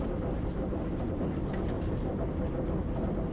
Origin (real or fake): real